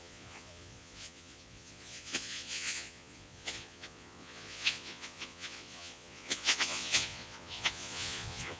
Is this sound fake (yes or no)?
yes